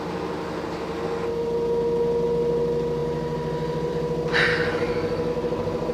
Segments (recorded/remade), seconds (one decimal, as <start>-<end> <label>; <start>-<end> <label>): 0.0-4.5 recorded; 4.5-5.3 remade; 5.3-5.9 recorded